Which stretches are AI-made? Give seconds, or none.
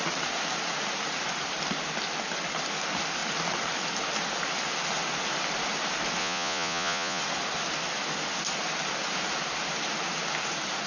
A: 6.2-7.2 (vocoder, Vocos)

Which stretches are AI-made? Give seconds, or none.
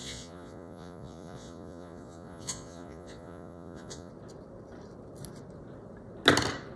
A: 0.0-4.1 (vocoder, Vocos)